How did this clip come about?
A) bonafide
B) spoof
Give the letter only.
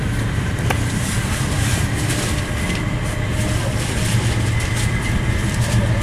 B